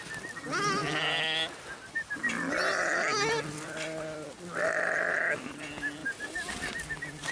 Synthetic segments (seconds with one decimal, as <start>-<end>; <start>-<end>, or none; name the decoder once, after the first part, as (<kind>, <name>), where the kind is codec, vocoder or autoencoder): 6.0-6.5 (vocoder, BigVGAN v2)